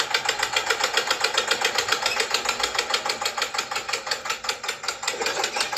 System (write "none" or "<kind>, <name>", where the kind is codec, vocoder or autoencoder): none